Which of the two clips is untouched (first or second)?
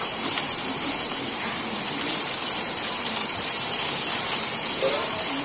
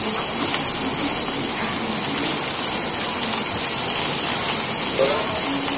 second